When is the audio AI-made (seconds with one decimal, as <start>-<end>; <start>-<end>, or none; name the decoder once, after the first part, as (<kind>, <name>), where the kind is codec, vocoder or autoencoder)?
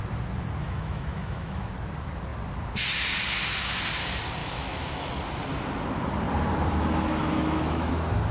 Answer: 0.6-1.7 (autoencoder, DAC-VAE); 4.4-5.1; 7.2-7.9